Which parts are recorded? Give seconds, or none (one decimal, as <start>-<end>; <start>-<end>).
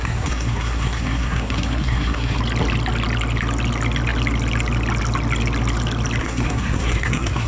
2.4-6.2